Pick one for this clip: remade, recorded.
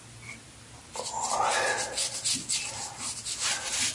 recorded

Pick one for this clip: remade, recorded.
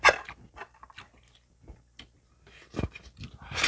recorded